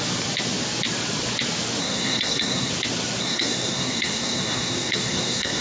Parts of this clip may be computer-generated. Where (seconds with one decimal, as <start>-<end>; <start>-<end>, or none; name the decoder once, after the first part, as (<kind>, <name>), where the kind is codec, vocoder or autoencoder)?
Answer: 1.8-2.7 (codec, SNAC); 3.2-5.6